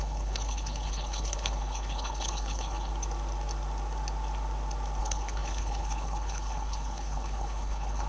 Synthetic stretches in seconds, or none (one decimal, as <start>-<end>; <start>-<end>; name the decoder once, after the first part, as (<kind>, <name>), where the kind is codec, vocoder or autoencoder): 0.0-2.9 (codec, HILCodec); 5.0-8.1